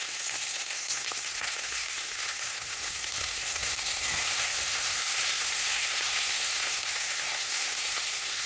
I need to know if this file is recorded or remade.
remade